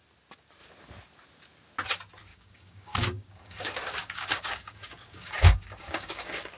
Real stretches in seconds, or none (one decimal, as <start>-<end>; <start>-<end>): 0.0-2.3